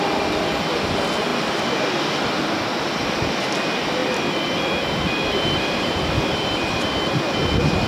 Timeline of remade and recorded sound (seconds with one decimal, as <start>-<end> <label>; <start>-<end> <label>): 0.0-4.0 recorded; 4.0-6.1 remade; 6.1-7.9 recorded